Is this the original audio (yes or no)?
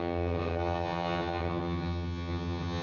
no